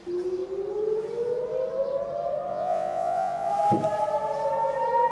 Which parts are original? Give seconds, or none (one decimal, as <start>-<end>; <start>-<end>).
0.0-2.5; 3.5-5.1